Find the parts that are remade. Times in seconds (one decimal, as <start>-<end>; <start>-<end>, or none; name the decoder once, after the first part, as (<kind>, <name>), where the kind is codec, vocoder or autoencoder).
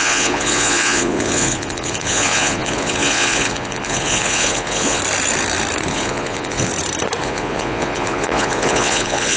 0.0-5.0 (vocoder, Vocos); 5.9-6.7; 7.2-9.4